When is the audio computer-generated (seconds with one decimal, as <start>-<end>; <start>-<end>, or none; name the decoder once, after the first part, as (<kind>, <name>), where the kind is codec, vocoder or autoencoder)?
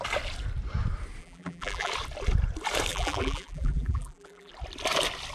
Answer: 1.2-1.9 (vocoder, BigVGAN v2); 2.9-4.5